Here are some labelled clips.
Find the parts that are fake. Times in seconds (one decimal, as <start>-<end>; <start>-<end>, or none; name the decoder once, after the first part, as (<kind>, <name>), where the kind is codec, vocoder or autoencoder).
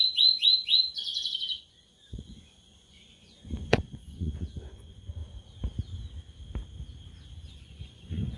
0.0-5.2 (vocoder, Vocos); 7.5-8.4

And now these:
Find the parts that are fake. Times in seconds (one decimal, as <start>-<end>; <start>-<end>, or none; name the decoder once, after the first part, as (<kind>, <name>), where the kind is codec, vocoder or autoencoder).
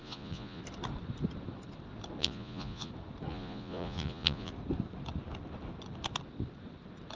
0.0-0.6 (vocoder, Vocos); 2.2-2.9; 3.3-4.5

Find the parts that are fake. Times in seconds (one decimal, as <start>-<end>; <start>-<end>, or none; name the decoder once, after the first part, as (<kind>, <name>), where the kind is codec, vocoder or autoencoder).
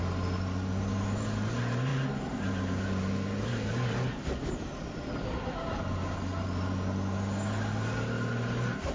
none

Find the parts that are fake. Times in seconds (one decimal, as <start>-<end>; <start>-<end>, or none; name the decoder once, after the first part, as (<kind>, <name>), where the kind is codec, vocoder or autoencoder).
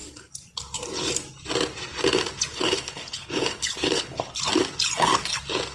2.5-4.4 (codec, HILCodec)